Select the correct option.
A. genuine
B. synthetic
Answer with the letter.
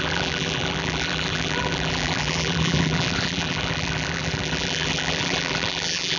B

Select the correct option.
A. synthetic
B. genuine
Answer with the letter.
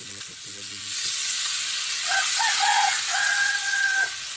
A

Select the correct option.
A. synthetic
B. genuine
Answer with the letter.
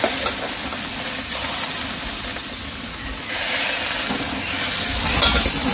B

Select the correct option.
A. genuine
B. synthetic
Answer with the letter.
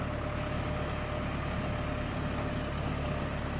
A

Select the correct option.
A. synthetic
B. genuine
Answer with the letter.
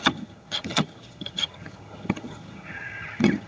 A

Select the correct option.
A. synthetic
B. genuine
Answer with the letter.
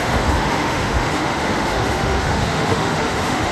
A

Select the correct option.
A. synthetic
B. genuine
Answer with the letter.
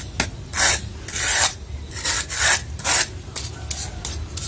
B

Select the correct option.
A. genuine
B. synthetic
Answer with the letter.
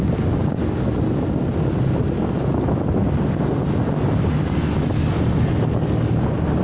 A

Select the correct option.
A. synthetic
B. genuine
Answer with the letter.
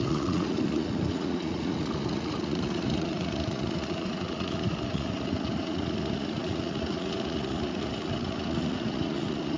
A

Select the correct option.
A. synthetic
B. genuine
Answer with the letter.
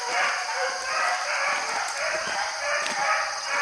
B